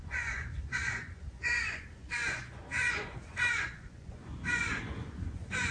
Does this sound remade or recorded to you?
remade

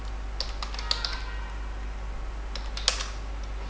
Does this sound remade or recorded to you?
recorded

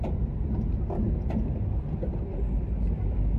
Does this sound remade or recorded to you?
recorded